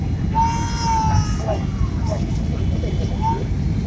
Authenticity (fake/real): real